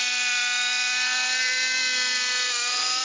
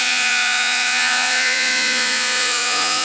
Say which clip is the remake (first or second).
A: second